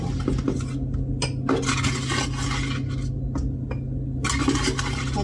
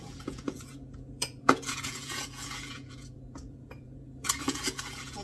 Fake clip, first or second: second